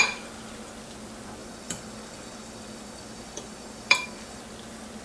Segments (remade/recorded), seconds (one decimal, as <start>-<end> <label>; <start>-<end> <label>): 0.0-1.4 recorded; 1.4-4.4 remade; 4.4-5.0 recorded